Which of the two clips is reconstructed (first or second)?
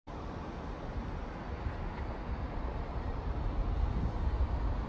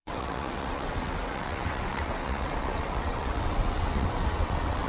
second